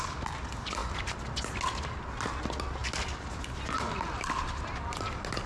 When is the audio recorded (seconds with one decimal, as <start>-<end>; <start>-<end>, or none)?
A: 0.0-5.5